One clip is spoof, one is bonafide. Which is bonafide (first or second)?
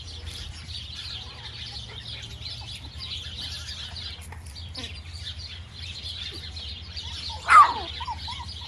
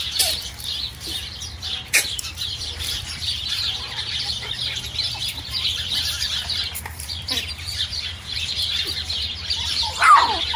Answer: first